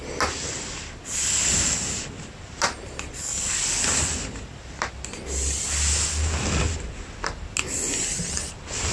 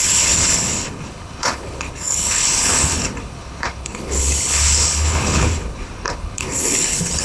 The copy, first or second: second